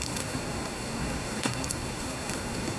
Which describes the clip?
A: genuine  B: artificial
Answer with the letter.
B